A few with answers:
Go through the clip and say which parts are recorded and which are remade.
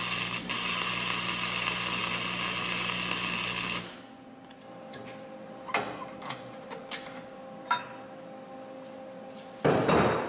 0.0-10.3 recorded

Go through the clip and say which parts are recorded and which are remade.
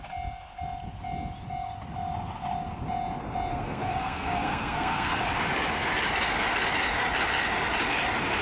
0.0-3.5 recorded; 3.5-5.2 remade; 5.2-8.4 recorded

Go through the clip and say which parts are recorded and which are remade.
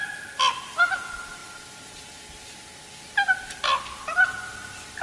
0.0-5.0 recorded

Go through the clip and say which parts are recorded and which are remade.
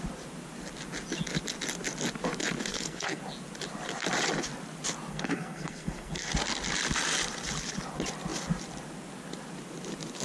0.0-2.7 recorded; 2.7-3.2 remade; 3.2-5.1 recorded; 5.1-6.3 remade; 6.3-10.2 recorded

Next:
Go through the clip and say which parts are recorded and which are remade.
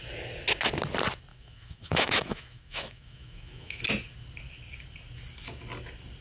0.0-1.3 recorded; 1.3-3.8 remade; 3.8-6.2 recorded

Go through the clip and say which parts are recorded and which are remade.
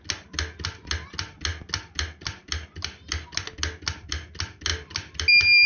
0.0-5.7 recorded